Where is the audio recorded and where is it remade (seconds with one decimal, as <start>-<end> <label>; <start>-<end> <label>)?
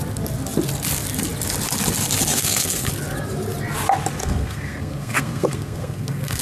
0.0-2.3 recorded; 2.3-2.9 remade; 2.9-4.2 recorded; 4.2-6.4 remade